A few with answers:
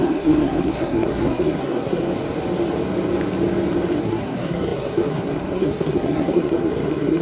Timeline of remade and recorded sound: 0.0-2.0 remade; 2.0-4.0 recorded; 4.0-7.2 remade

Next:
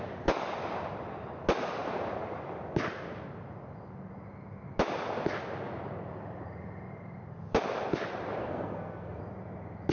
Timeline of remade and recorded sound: 0.0-8.4 recorded; 8.4-9.2 remade; 9.2-9.9 recorded

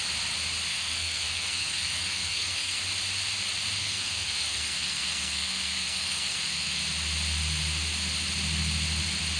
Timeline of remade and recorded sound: 0.0-0.7 recorded; 0.7-2.8 remade; 2.8-3.8 recorded; 3.8-6.8 remade; 6.8-9.4 recorded